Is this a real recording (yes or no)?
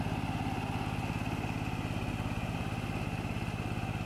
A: yes